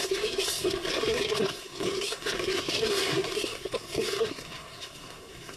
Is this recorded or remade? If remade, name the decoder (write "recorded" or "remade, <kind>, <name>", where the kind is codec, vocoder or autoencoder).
remade, codec, SNAC